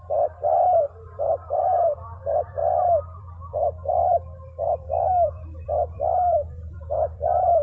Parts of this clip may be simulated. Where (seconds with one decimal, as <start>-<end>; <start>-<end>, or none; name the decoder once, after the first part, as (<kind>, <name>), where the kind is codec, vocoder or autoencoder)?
0.0-2.6 (vocoder, BigVGAN v2); 3.2-7.6